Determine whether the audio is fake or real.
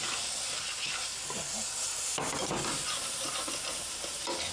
real